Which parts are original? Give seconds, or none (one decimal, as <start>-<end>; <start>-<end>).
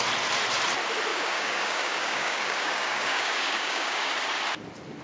0.0-1.1; 4.1-5.0